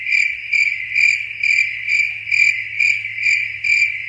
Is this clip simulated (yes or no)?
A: no